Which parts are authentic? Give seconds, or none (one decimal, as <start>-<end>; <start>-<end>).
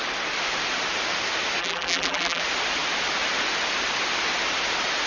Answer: 0.0-1.6; 2.4-5.1